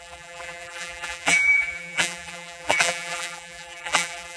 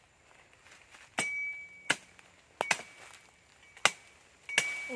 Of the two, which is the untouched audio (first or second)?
second